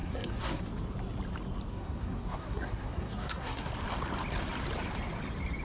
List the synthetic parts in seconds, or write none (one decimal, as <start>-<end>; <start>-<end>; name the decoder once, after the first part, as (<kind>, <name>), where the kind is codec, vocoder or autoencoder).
0.0-0.6 (codec, SNAC); 1.7-3.7